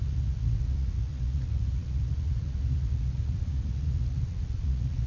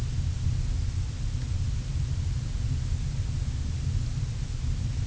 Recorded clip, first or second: second